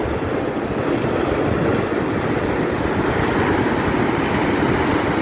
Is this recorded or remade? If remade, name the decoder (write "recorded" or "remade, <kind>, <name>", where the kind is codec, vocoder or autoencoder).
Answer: recorded